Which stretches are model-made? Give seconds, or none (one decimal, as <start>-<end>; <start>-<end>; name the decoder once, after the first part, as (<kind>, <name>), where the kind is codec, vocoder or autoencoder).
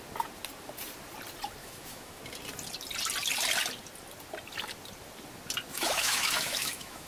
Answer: 1.6-2.2 (autoencoder, DAC-VAE); 5.7-7.1